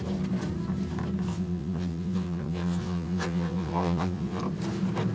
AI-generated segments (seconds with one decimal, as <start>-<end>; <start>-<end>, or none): 1.3-4.4